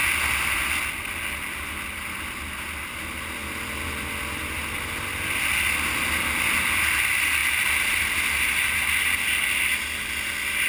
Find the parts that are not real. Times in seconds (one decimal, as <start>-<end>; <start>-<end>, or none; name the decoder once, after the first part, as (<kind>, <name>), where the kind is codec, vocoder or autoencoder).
none